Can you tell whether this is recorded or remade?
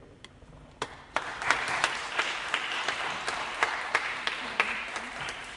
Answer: remade